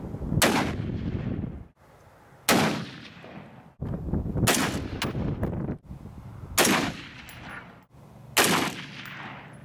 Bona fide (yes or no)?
yes